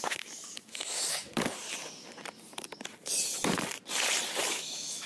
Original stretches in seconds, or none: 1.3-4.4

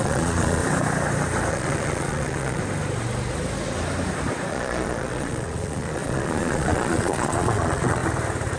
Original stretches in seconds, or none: 0.6-1.5; 2.6-4.5; 8.0-8.6

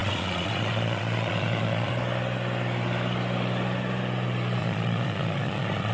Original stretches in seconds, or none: 1.9-4.6

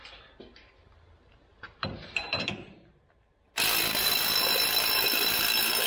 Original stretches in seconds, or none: 0.0-1.5; 3.5-5.9

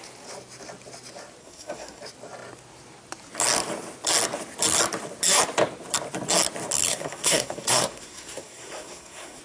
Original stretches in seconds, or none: 0.0-1.4; 2.0-6.9

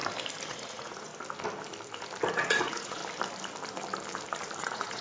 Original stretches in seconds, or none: 0.0-0.5; 1.1-2.3; 3.0-4.6